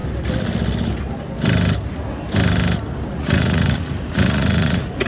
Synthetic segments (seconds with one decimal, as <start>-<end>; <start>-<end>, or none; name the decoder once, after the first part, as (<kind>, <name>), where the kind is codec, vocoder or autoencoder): 3.1-5.1 (vocoder, Vocos)